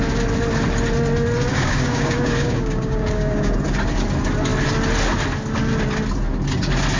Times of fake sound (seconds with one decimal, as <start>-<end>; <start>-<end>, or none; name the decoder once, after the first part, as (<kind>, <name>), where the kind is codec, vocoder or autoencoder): 1.5-3.6 (codec, DAC)